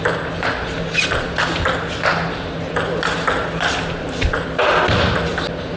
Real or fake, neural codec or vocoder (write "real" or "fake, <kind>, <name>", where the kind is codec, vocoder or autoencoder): real